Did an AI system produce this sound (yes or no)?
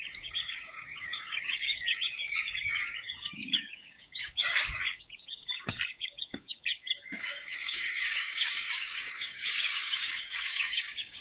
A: yes